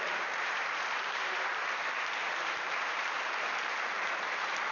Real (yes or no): no